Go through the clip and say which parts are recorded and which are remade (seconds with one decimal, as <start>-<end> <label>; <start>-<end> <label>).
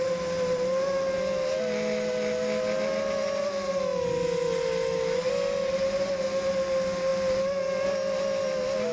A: 0.0-8.9 recorded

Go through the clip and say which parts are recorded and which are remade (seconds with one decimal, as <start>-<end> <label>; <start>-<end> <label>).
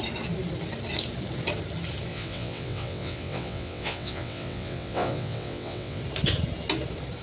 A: 0.0-2.1 recorded; 2.1-6.0 remade; 6.0-7.2 recorded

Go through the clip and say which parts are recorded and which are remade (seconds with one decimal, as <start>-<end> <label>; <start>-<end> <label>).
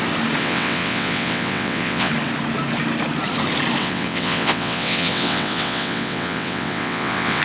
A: 0.0-0.4 recorded; 0.4-2.1 remade; 2.1-3.8 recorded; 3.8-7.4 remade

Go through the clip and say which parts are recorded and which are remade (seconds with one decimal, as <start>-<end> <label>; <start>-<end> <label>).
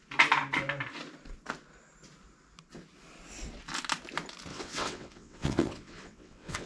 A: 0.0-4.5 recorded; 4.5-6.7 remade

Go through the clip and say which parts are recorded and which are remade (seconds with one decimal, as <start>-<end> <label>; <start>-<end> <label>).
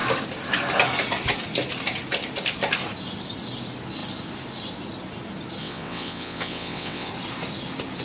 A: 0.0-5.6 recorded; 5.6-7.1 remade; 7.1-8.0 recorded